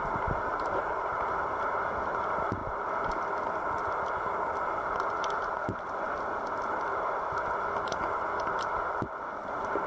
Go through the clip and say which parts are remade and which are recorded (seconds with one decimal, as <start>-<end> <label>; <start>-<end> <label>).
0.0-0.5 recorded; 0.5-1.2 remade; 1.2-9.9 recorded